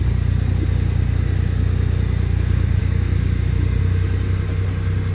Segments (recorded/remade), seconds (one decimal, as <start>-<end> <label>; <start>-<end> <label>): 0.0-2.8 recorded; 2.8-3.8 remade; 3.8-5.1 recorded